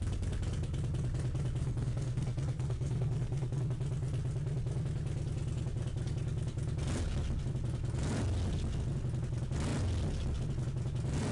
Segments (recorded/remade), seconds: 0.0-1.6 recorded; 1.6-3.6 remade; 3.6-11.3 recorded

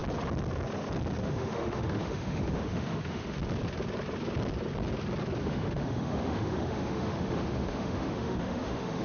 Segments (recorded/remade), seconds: 0.0-1.2 recorded; 1.2-3.4 remade; 3.4-5.4 recorded; 5.4-9.0 remade